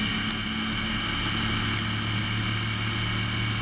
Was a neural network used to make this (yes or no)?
no